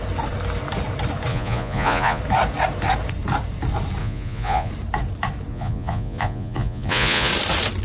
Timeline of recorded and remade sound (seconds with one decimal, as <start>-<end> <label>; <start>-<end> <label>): 0.0-1.3 recorded; 1.3-2.2 remade; 2.2-4.0 recorded; 4.0-4.7 remade; 4.7-5.5 recorded; 5.5-7.3 remade; 7.3-7.8 recorded